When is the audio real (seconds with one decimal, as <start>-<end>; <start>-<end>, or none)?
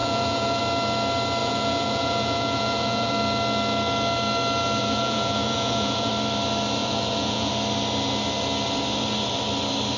0.6-1.4; 3.1-4.8; 6.1-6.8; 7.5-10.0